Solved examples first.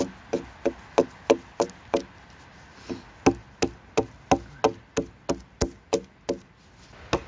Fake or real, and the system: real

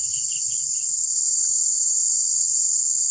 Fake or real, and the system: real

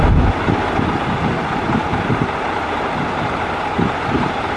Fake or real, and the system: real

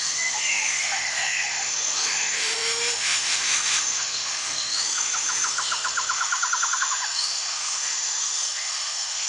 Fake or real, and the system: fake, autoencoder, DAC-VAE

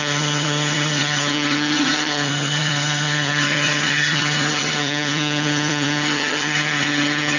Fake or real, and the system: fake, vocoder, HiFi-GAN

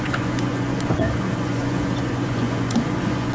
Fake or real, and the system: fake, vocoder, Vocos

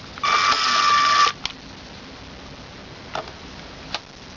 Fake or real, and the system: real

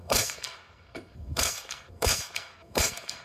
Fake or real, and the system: fake, codec, SNAC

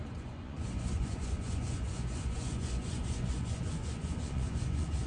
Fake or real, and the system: fake, vocoder, Vocos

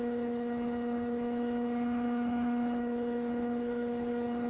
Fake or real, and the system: fake, codec, HILCodec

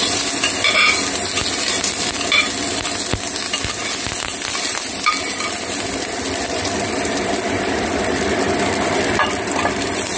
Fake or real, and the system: real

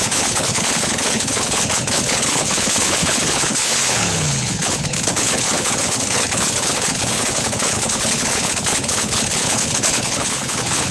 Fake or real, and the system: fake, codec, HILCodec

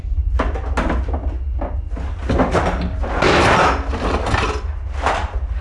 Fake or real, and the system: real